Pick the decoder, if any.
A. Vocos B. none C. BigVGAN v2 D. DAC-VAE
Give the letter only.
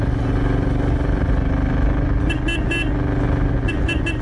B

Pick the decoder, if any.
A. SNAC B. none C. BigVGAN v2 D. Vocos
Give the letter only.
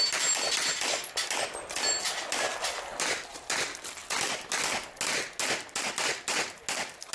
B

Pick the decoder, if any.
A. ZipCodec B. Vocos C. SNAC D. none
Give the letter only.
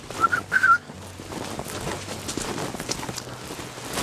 D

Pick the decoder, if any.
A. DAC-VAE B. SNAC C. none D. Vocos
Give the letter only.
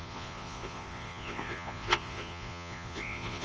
D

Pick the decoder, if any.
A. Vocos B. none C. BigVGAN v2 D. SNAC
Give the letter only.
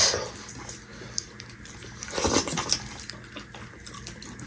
B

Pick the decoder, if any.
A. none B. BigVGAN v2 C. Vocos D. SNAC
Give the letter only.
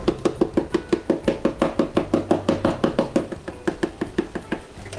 A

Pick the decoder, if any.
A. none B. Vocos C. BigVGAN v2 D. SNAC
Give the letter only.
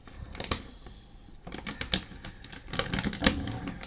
A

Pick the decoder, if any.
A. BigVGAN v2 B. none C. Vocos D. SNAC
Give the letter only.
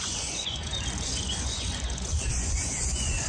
C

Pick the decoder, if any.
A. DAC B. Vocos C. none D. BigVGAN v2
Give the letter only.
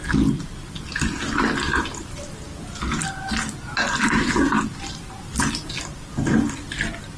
C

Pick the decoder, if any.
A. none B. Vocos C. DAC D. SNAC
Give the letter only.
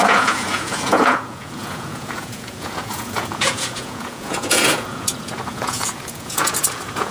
B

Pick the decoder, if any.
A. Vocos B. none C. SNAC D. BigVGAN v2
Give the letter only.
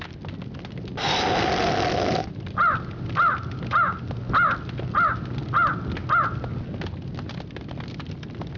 B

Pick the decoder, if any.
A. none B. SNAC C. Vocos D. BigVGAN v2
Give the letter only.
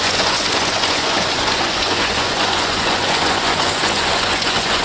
C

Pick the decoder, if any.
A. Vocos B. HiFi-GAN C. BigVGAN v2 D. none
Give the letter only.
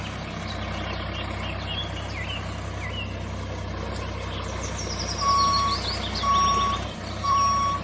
D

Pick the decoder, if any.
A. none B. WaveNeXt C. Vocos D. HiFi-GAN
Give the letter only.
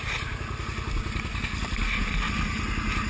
A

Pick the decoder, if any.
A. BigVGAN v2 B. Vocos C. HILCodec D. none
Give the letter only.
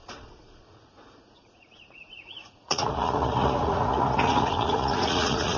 B